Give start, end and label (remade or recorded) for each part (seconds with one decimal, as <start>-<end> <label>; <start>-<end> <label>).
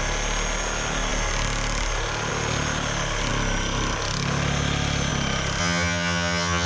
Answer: 0.0-5.6 recorded; 5.6-6.7 remade